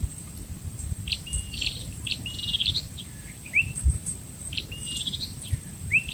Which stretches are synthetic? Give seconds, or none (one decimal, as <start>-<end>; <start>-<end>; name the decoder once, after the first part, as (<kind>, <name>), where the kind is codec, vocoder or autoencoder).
0.0-6.1 (vocoder, BigVGAN v2)